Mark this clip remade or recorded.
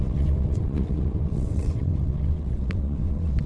remade